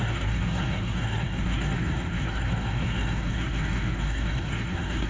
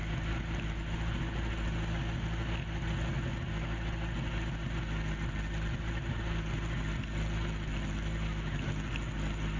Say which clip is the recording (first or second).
second